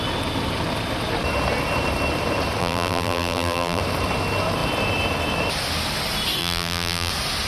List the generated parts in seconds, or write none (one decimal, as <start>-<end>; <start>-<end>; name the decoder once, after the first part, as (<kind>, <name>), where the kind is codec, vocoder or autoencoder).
2.6-3.8 (vocoder, BigVGAN v2); 6.4-7.1